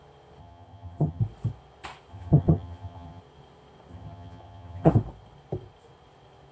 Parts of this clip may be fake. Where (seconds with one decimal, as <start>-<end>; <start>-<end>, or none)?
0.4-1.2; 2.1-3.2; 3.9-4.9